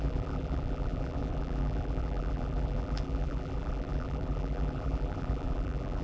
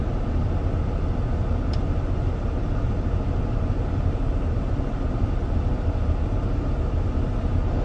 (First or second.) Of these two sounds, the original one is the second